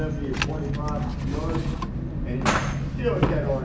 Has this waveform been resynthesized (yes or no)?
no